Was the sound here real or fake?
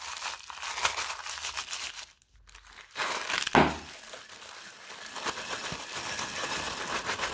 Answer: real